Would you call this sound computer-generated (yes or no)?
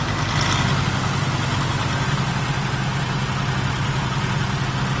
no